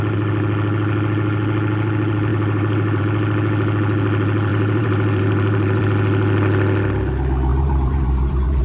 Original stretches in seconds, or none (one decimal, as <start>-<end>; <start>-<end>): 0.0-2.3; 3.0-4.5; 5.8-7.5